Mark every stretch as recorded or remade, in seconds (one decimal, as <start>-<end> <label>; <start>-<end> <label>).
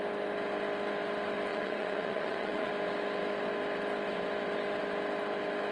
0.0-1.5 recorded; 1.5-2.7 remade; 2.7-5.7 recorded